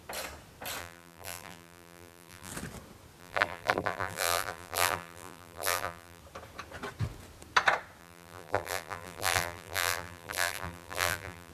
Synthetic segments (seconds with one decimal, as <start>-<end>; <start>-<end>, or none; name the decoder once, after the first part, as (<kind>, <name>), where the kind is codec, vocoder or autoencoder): 0.8-2.5 (vocoder, BigVGAN v2); 3.2-6.2; 8.0-11.5